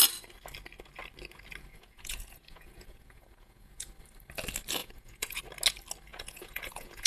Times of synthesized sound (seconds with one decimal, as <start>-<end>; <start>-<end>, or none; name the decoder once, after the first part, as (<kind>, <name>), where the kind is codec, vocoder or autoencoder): 1.7-3.9 (vocoder, Vocos); 4.8-5.4; 6.1-7.1